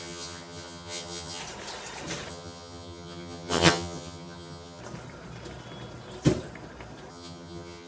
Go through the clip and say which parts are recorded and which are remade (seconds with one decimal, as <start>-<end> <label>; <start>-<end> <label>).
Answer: 0.0-1.4 remade; 1.4-2.3 recorded; 2.3-4.8 remade; 4.8-7.1 recorded; 7.1-7.9 remade